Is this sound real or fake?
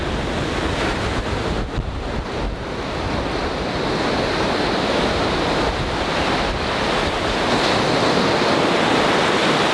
real